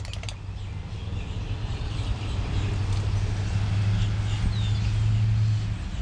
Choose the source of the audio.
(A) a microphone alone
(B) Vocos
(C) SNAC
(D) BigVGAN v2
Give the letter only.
A